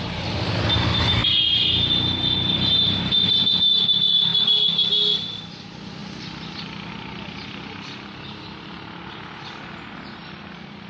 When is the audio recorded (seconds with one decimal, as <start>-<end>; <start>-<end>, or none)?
0.0-10.9